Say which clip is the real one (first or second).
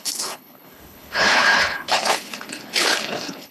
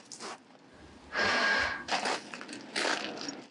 second